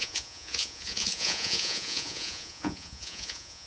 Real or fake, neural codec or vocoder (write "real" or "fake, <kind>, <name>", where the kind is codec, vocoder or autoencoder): fake, vocoder, Vocos